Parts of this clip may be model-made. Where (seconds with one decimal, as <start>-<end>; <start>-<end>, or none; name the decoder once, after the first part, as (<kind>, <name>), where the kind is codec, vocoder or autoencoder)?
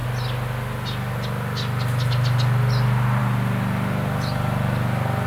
none